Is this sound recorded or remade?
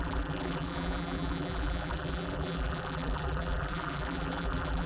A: remade